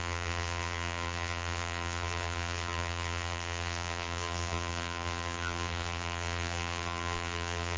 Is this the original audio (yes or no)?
no